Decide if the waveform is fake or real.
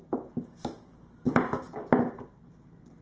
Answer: real